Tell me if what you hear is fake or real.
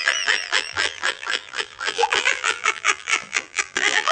fake